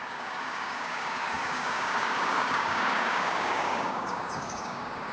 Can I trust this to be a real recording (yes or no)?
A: no